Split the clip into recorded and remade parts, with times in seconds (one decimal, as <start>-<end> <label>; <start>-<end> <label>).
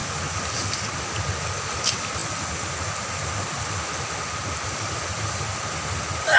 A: 0.0-1.0 remade; 1.0-6.4 recorded